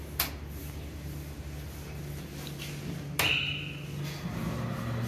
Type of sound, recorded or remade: recorded